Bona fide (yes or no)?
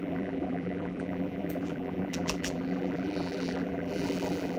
no